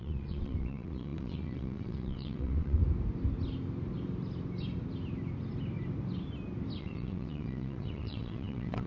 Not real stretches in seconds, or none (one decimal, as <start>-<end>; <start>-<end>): 0.0-2.8; 6.8-8.9